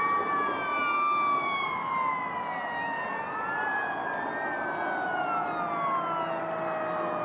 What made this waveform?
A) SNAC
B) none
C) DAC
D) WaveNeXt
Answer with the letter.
B